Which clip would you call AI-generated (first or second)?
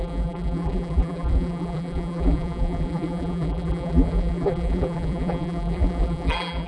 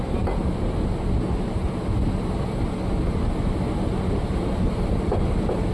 first